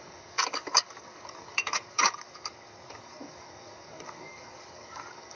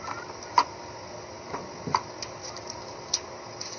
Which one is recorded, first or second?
second